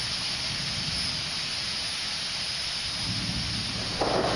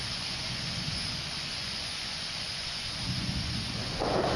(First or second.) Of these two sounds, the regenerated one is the second